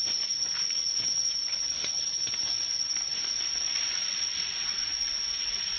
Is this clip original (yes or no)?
yes